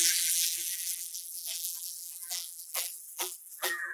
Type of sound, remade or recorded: remade